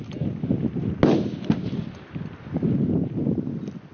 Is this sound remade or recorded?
recorded